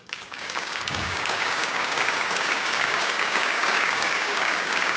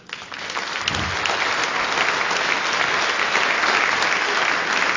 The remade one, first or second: first